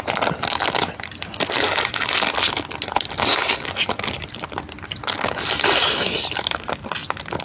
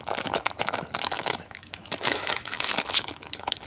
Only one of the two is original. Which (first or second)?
first